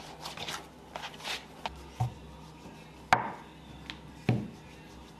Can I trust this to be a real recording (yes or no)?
yes